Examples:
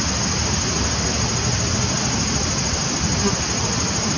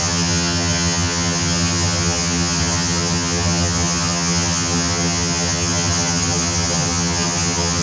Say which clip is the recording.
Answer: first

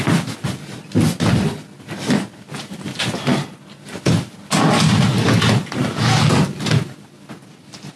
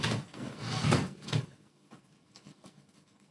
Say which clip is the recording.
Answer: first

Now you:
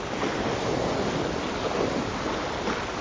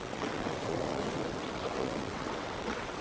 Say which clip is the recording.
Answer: first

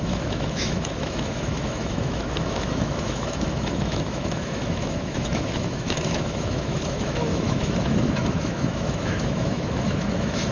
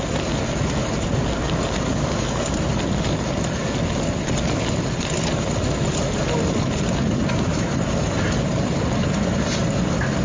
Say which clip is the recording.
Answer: second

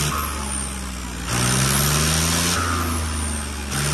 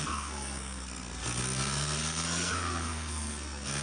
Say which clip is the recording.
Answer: first